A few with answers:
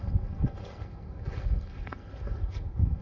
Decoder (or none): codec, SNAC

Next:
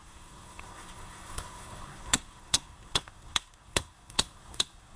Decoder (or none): codec, SNAC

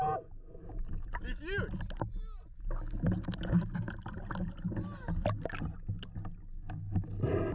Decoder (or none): none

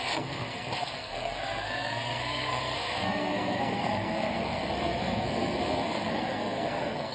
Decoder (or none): codec, SNAC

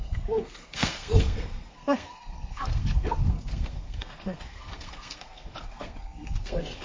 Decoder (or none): codec, SNAC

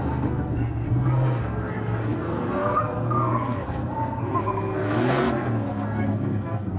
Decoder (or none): codec, SNAC